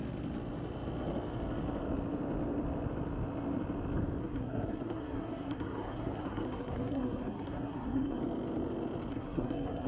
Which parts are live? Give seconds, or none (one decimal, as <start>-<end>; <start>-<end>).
0.0-4.2; 8.2-9.1